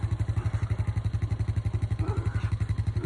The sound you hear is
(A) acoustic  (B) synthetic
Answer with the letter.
A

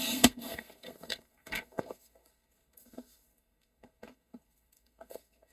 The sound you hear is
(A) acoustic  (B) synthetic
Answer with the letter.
B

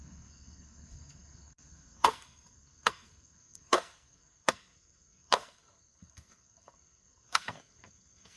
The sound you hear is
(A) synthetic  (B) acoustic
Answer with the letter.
A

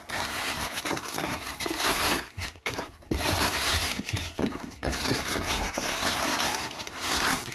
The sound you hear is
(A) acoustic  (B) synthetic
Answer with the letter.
B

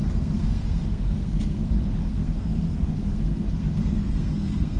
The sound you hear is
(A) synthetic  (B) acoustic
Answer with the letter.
A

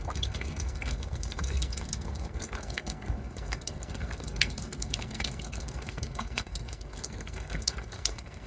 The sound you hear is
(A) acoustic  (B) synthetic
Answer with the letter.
B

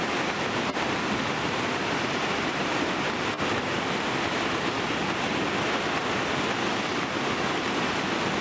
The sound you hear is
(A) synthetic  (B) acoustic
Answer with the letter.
B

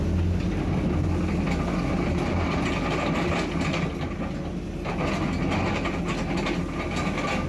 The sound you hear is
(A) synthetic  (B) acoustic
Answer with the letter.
B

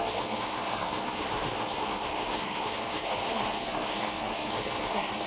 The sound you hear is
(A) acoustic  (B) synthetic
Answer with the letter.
B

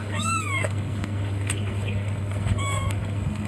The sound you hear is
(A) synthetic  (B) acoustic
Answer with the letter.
A